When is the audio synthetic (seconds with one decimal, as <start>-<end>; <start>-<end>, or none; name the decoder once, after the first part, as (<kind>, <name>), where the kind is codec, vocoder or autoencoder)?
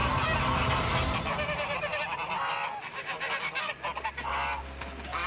none